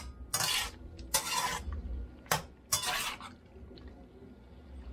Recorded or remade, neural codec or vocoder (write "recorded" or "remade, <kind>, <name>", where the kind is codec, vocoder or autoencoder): recorded